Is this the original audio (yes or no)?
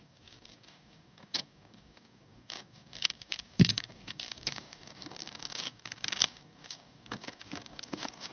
no